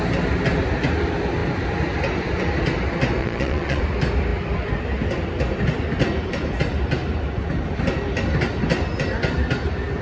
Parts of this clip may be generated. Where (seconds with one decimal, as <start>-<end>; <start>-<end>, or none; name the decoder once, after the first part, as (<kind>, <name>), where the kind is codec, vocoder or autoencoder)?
3.2-3.8 (vocoder, Vocos)